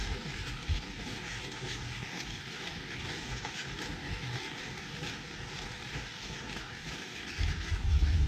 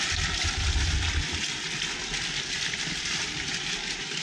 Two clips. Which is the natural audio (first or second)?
second